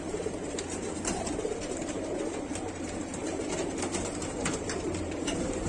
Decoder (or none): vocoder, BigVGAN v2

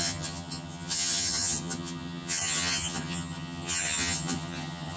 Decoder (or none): vocoder, HiFi-GAN